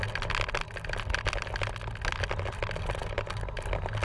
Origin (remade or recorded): recorded